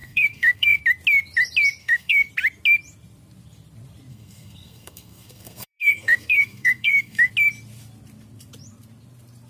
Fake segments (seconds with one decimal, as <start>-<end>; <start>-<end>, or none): 0.0-0.8; 1.8-2.3; 4.1-7.3